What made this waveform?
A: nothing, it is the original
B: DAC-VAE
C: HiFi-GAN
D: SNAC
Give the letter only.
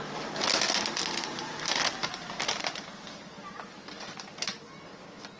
A